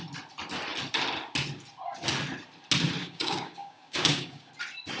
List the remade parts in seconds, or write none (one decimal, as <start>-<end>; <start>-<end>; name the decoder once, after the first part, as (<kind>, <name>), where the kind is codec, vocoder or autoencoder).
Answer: 3.0-4.5 (codec, DAC)